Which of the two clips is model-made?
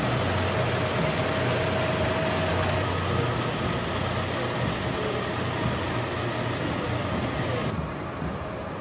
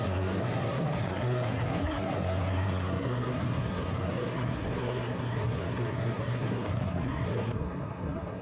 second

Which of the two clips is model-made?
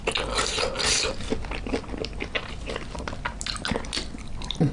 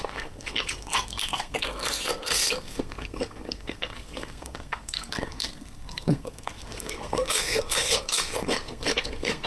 second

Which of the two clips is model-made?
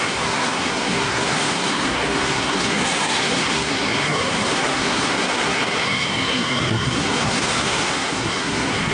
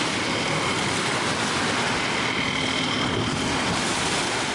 first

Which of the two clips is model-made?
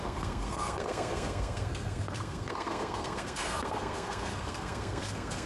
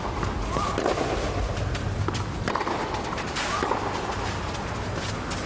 first